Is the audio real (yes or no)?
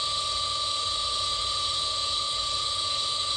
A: no